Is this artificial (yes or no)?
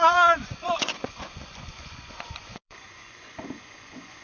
yes